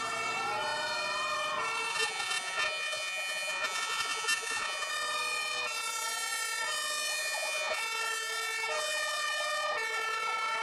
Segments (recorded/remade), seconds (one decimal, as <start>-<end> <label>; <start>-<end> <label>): 0.0-1.9 recorded; 1.9-4.9 remade; 4.9-7.2 recorded; 7.2-7.8 remade; 7.8-10.6 recorded